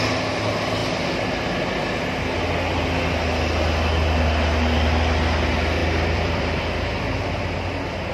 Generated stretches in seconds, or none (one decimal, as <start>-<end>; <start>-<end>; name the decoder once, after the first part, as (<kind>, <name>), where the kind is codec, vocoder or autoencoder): 5.8-7.0 (vocoder, BigVGAN v2)